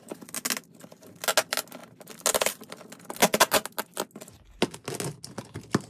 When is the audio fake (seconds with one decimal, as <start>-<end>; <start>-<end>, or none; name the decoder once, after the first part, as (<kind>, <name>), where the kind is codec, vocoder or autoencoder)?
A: none